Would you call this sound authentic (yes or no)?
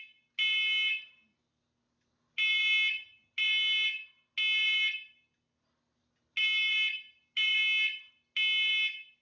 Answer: yes